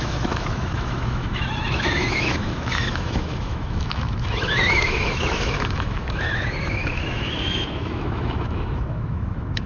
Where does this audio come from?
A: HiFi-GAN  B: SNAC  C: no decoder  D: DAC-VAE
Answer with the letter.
D